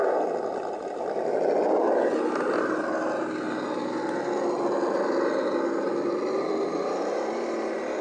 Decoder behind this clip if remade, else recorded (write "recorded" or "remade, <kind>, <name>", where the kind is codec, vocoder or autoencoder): recorded